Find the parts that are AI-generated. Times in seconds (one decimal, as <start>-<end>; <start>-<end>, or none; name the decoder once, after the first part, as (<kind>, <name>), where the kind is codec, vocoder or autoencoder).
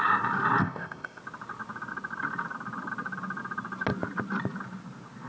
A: 0.6-1.2 (codec, ZipCodec)